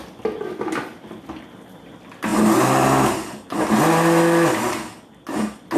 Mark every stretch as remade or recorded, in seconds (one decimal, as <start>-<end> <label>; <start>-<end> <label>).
0.0-5.8 recorded